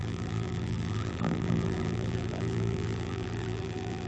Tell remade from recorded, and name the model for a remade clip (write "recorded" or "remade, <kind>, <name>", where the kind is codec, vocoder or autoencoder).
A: remade, vocoder, BigVGAN v2